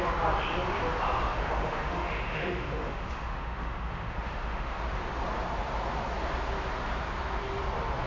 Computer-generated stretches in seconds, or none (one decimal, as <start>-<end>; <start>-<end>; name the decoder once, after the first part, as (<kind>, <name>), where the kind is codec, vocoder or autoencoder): 1.3-4.8 (autoencoder, DAC-VAE)